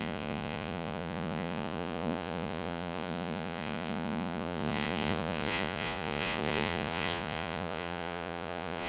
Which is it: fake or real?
fake